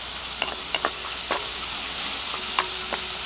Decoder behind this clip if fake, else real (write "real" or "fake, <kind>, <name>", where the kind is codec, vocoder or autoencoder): real